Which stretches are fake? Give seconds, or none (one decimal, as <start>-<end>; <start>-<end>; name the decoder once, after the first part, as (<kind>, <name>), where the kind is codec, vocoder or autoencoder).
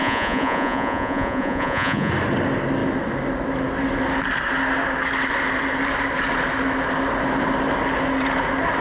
0.0-2.1 (vocoder, Vocos)